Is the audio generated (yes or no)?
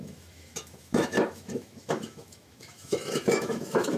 yes